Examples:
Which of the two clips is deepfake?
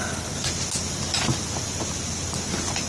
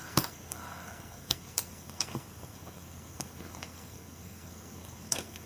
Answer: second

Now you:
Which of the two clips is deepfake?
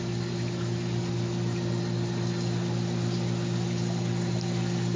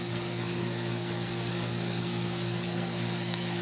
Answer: second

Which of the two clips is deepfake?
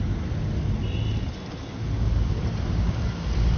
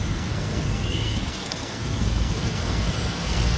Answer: second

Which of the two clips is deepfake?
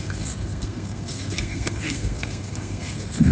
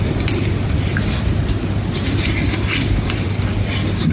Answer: first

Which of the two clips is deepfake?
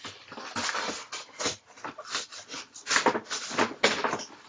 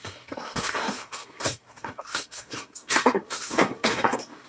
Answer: second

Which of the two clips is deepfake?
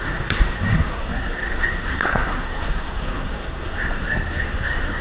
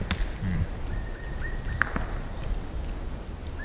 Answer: first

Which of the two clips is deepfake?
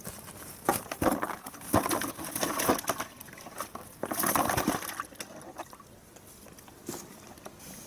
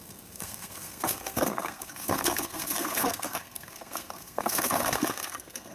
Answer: second